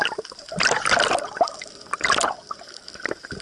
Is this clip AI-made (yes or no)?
no